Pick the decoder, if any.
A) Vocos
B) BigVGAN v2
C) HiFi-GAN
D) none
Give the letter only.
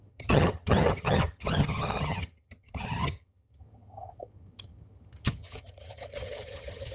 C